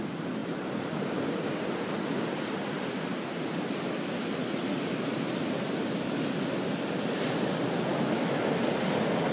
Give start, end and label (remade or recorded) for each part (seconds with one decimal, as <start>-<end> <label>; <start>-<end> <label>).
0.0-7.9 recorded; 7.9-8.4 remade; 8.4-9.3 recorded